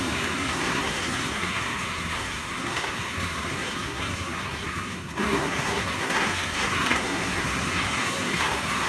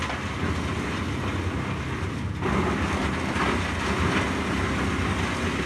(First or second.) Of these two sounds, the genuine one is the second